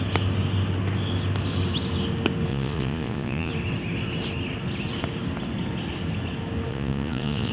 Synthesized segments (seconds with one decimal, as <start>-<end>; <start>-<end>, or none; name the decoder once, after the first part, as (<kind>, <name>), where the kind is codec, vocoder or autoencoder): 2.5-3.5 (vocoder, Vocos); 6.7-7.5